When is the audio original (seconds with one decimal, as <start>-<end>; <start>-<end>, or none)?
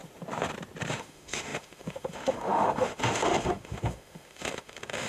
0.0-0.9